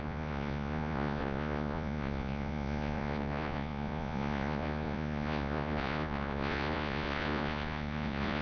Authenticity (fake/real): fake